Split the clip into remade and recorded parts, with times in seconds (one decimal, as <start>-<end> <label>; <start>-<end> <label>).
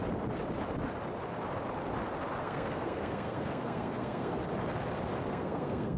0.0-2.4 recorded; 2.4-4.4 remade; 4.4-5.3 recorded; 5.3-6.0 remade